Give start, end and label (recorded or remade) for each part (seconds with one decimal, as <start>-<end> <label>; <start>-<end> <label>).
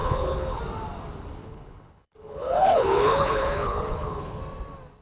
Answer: 0.0-0.6 remade; 0.6-1.4 recorded; 1.4-4.4 remade; 4.4-5.0 recorded